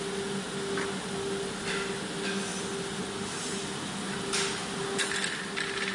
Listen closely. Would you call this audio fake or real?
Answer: real